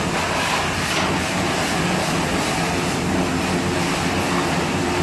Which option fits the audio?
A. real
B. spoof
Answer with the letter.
A